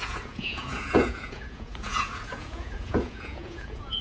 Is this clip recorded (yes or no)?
no